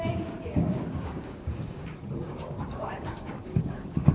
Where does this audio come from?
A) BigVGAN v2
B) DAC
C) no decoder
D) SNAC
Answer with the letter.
B